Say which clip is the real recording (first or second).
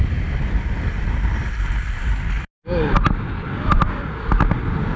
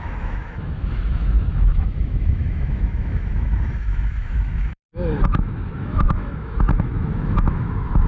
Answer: first